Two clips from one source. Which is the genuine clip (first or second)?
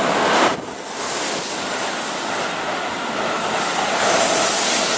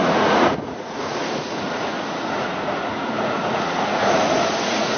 first